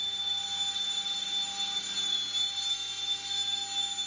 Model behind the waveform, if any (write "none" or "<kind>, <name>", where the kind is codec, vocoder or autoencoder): none